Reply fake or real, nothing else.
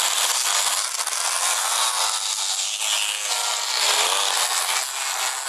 real